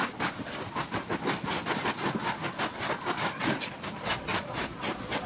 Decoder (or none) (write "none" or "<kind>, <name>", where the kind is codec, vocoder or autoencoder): none